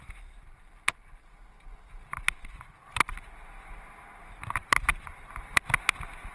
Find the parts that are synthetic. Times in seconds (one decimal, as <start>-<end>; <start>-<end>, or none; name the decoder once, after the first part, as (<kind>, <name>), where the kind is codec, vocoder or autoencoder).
none